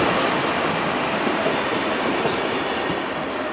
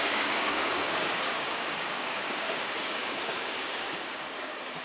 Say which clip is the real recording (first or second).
first